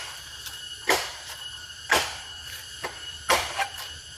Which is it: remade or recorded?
remade